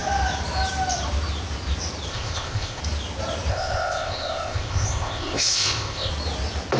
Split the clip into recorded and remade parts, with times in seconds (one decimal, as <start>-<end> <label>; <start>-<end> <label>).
0.0-2.1 recorded; 2.1-2.8 remade; 2.8-3.5 recorded; 3.5-6.1 remade; 6.1-6.8 recorded